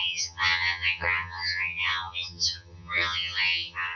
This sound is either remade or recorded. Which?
remade